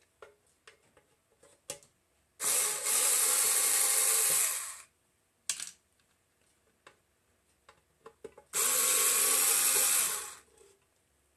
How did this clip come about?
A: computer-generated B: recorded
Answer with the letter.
B